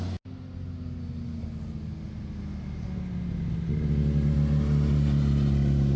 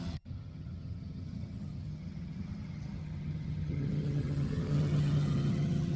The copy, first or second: second